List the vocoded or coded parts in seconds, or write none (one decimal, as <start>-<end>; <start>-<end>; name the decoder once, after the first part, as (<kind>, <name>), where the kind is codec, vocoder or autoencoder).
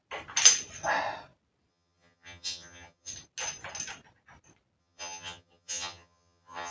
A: 1.7-3.1 (vocoder, HiFi-GAN); 4.8-6.7